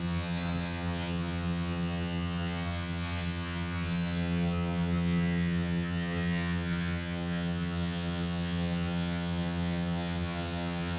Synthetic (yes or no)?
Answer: yes